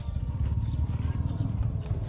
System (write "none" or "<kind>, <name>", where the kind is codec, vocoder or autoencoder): none